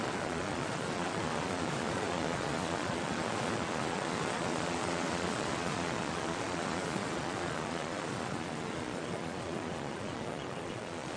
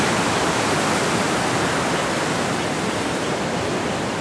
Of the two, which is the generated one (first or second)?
first